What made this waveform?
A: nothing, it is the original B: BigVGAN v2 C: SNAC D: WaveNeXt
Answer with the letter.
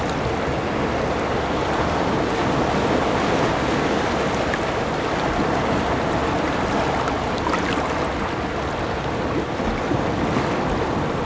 A